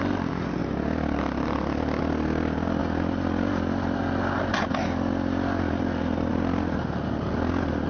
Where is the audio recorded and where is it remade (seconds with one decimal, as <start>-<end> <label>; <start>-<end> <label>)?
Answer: 0.0-7.9 recorded